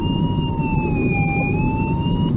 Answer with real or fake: real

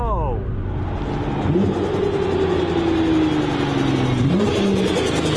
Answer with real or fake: real